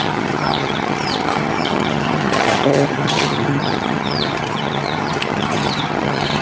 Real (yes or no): no